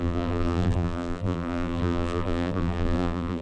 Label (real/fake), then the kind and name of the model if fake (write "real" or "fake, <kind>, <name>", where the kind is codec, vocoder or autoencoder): fake, vocoder, BigVGAN v2